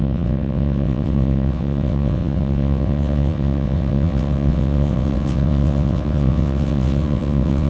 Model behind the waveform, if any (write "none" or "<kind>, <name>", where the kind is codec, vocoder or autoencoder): vocoder, WaveNeXt